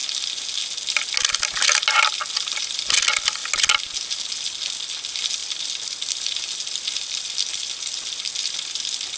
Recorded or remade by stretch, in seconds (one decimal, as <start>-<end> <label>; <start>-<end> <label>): 0.0-9.2 recorded